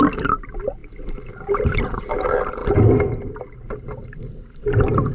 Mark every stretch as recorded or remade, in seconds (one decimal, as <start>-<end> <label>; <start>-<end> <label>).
0.0-5.1 recorded